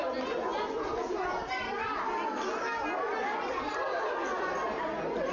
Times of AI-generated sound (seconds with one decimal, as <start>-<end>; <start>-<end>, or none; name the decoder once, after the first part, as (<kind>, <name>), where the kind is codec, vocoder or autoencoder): none

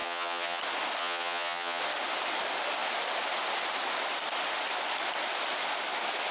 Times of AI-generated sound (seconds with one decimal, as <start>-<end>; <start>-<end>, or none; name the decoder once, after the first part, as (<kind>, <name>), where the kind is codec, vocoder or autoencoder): 0.0-0.6 (vocoder, HiFi-GAN); 1.0-1.8